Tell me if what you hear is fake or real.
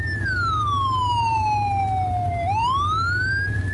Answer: real